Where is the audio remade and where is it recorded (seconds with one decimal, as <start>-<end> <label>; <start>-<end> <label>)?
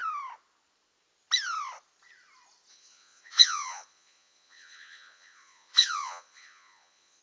0.0-2.7 recorded; 2.7-7.2 remade